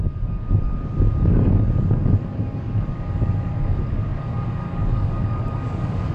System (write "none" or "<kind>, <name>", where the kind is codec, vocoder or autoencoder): codec, DAC